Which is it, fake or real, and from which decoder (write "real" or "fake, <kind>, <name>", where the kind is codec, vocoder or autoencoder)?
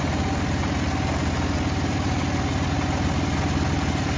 real